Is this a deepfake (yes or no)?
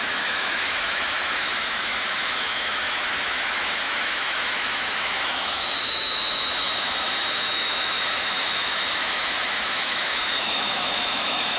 yes